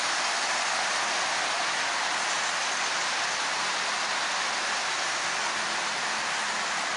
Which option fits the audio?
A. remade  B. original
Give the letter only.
B